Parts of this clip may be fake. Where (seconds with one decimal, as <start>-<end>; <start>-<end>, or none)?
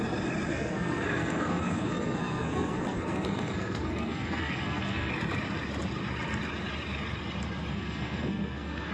0.5-5.1; 7.7-8.9